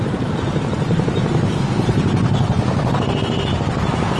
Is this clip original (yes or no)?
no